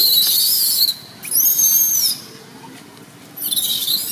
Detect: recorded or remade recorded